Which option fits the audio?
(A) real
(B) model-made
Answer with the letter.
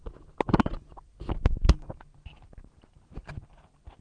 A